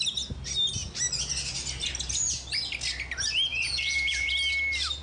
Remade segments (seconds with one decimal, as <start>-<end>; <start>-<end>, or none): 3.5-4.3